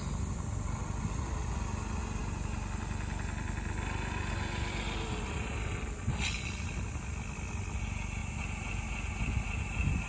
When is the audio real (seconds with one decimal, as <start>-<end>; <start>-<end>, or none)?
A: 0.0-10.1